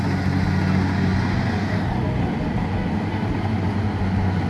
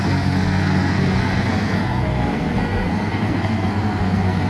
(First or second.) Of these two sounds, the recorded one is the first